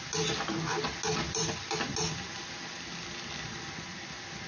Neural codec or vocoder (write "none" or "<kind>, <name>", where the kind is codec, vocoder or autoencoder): none